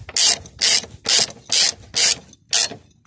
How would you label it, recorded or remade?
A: recorded